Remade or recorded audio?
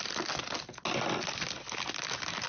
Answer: recorded